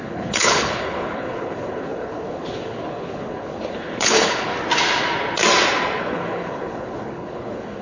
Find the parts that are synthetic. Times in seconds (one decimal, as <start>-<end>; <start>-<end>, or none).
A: 0.0-4.5; 6.0-7.8